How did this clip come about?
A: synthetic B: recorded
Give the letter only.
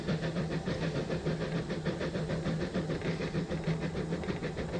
B